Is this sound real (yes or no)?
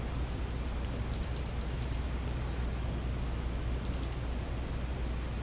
no